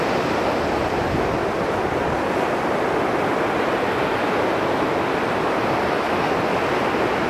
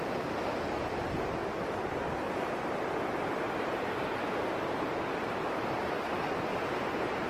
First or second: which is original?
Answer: first